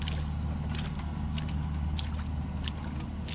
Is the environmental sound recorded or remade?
recorded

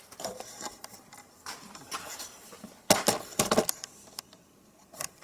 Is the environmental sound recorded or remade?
remade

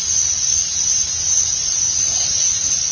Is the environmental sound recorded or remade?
recorded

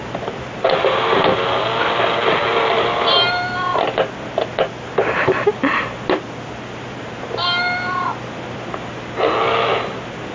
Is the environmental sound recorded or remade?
recorded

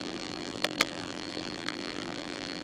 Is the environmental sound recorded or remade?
remade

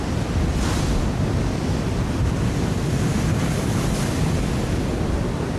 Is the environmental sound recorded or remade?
recorded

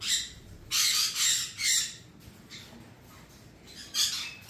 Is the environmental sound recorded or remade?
recorded